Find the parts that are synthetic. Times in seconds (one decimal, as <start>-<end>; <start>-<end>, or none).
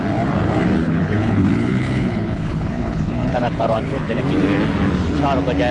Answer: 0.8-4.2